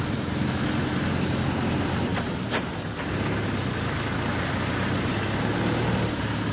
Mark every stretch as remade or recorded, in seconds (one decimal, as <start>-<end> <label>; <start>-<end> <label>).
0.0-2.1 recorded; 2.1-3.1 remade; 3.1-6.5 recorded